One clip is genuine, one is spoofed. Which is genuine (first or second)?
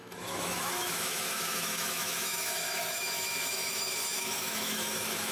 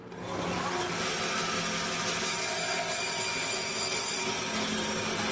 second